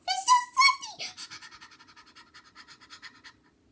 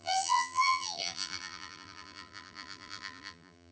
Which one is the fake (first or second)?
second